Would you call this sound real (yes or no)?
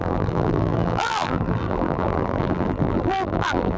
no